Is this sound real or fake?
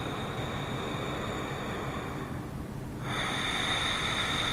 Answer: real